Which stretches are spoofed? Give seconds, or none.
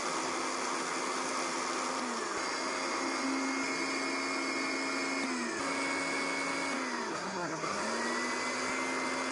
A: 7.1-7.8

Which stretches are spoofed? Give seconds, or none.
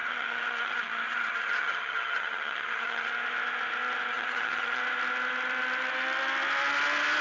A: 0.0-3.1; 4.1-4.8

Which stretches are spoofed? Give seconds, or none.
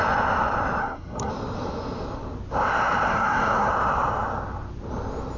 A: 0.8-1.3; 3.1-3.7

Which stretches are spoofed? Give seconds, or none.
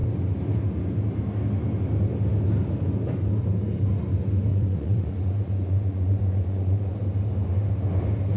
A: 4.5-6.9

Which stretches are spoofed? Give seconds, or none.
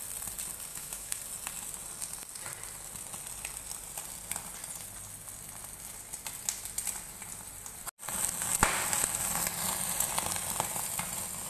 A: 0.7-1.2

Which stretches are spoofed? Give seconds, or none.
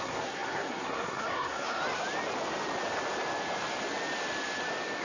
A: 0.0-1.8